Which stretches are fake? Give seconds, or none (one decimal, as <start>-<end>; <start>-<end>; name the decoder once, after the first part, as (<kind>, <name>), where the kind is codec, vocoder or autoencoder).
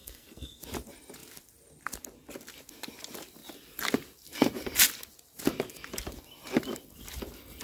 0.0-0.6 (codec, SNAC)